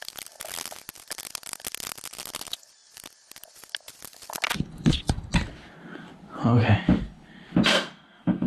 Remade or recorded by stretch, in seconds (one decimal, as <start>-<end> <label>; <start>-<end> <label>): 0.0-7.7 recorded; 7.7-8.5 remade